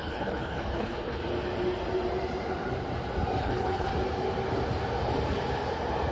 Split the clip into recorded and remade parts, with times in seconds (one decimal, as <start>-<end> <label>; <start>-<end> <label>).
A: 0.0-1.2 remade; 1.2-3.4 recorded; 3.4-3.9 remade; 3.9-6.1 recorded